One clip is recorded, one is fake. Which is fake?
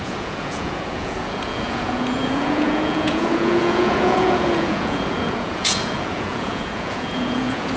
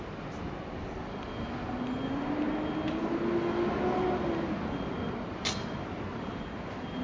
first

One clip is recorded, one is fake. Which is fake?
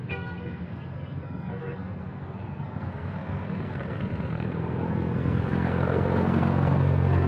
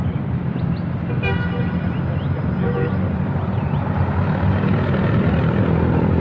first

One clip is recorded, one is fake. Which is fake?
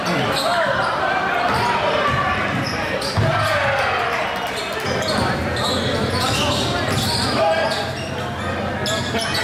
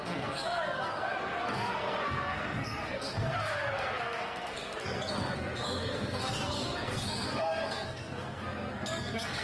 second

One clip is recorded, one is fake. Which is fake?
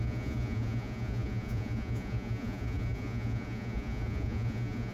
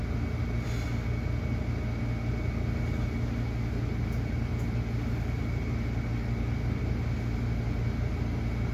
first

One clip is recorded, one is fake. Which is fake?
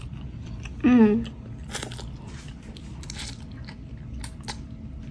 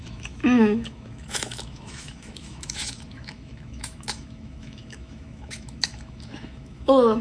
second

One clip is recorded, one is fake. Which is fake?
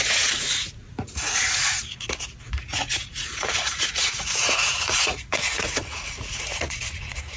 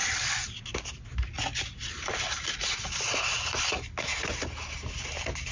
first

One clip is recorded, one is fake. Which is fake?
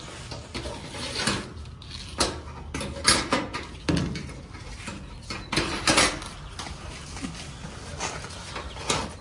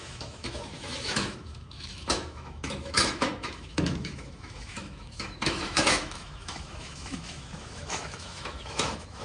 second